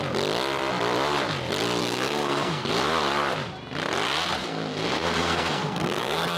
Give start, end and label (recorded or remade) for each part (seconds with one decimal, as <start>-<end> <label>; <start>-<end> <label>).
0.0-1.8 recorded; 1.8-2.7 remade; 2.7-4.4 recorded; 4.4-6.4 remade